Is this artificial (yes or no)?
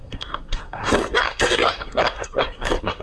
yes